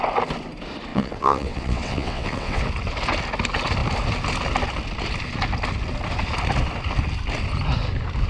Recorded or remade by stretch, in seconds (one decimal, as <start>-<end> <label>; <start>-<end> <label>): 0.0-0.9 recorded; 0.9-2.6 remade; 2.6-8.3 recorded